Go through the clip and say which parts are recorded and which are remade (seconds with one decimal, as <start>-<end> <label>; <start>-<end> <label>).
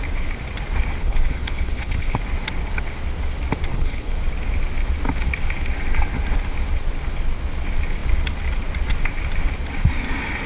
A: 0.0-1.0 recorded; 1.0-2.2 remade; 2.2-3.7 recorded; 3.7-4.2 remade; 4.2-10.5 recorded